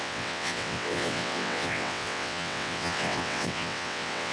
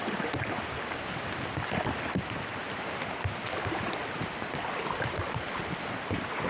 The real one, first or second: second